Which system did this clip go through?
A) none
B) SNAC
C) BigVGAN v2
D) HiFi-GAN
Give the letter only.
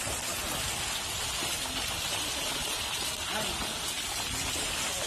A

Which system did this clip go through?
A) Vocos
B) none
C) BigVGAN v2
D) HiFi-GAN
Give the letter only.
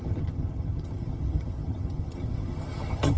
D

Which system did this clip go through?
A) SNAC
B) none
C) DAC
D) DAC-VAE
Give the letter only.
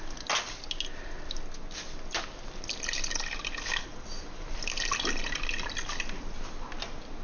B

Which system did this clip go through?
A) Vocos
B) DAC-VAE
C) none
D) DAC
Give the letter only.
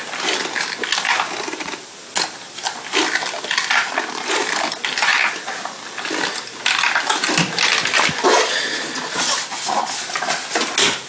C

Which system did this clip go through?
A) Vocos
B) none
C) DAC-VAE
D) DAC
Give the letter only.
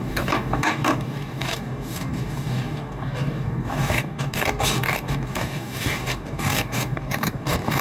D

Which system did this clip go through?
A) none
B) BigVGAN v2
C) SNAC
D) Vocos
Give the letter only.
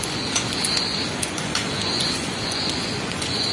D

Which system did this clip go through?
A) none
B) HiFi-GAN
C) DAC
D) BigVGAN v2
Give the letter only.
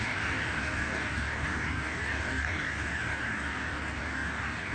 C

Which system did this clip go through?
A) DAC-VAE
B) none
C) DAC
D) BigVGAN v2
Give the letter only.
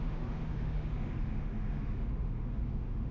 A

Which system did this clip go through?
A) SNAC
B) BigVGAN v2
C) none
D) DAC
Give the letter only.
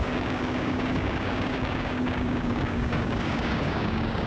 D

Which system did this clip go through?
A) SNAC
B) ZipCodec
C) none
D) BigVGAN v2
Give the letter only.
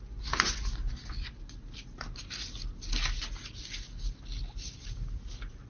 C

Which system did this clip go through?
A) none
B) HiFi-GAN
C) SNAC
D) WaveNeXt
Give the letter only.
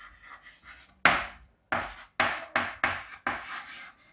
A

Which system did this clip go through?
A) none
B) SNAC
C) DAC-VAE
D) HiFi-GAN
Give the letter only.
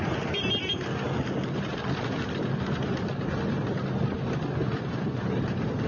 A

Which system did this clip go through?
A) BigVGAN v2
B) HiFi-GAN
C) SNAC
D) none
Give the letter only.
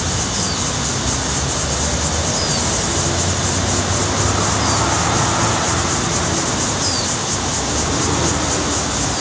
D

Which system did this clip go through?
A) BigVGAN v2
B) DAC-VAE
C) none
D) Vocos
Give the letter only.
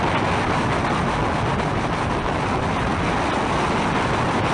C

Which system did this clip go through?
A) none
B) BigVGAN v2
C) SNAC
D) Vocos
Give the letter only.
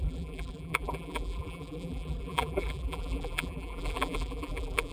B